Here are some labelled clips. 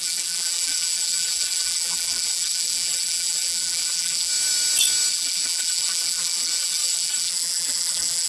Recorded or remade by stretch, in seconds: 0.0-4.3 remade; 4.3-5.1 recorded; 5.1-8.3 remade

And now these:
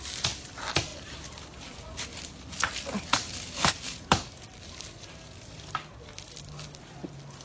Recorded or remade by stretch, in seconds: 0.0-0.9 remade; 0.9-3.7 recorded; 3.7-7.4 remade

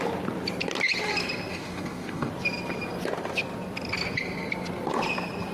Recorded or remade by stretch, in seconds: 0.0-1.5 recorded; 1.5-2.3 remade; 2.3-5.5 recorded

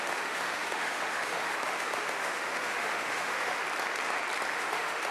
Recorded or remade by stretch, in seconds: 0.0-3.6 remade; 3.6-4.5 recorded; 4.5-5.1 remade

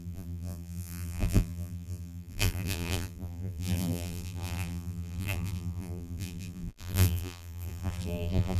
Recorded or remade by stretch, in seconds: 0.0-8.6 remade